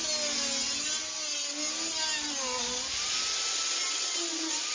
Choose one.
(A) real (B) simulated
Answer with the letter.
A